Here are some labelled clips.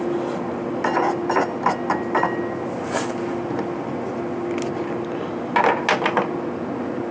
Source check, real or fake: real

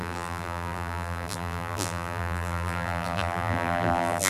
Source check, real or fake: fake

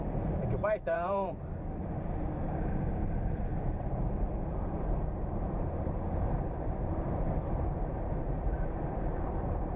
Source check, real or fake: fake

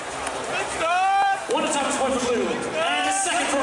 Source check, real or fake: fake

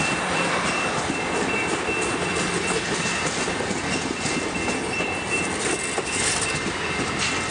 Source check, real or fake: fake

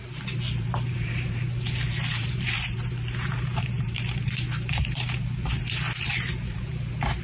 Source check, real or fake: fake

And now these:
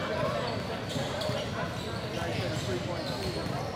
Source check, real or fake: real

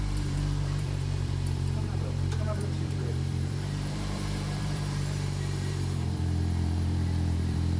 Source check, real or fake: fake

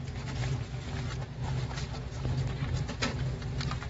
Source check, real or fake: real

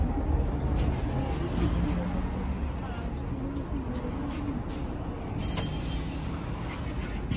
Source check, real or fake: real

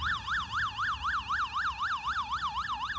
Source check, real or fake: real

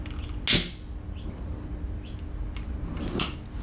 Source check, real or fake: real